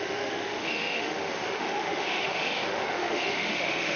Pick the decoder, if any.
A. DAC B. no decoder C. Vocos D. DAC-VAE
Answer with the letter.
D